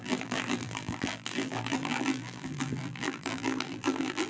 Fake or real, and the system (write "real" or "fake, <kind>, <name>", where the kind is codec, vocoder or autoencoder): fake, vocoder, BigVGAN v2